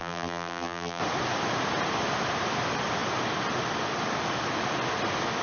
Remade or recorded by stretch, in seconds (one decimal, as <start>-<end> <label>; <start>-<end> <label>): 0.0-1.0 remade; 1.0-5.4 recorded